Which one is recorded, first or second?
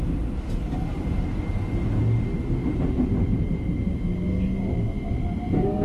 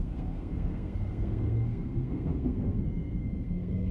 first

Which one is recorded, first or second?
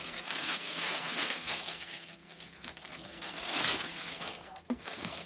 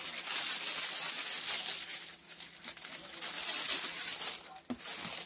second